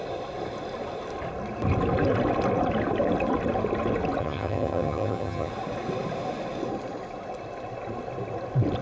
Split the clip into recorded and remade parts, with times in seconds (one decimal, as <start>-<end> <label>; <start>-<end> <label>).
0.0-4.2 recorded; 4.2-5.5 remade; 5.5-8.8 recorded